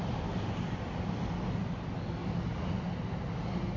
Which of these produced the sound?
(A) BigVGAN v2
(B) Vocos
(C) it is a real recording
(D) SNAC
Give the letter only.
C